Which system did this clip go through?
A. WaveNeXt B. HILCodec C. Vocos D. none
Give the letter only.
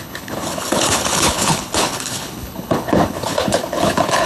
B